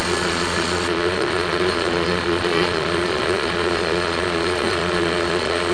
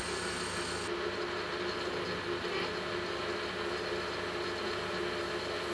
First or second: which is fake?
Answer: first